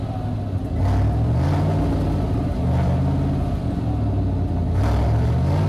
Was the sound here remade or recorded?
recorded